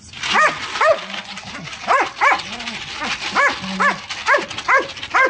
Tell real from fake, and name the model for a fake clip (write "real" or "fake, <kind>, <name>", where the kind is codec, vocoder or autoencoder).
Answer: real